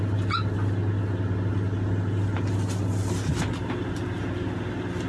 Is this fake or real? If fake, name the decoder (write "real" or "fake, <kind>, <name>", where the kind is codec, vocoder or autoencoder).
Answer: real